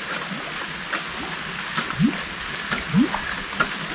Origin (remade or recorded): recorded